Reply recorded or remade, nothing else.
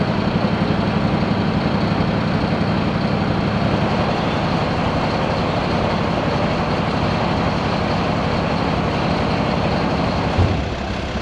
recorded